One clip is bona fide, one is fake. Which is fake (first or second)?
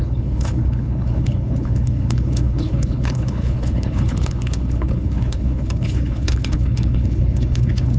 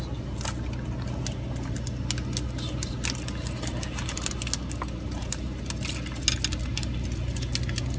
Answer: first